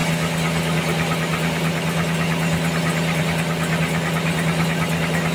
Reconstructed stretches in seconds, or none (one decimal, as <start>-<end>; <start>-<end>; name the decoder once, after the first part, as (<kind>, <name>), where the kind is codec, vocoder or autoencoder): none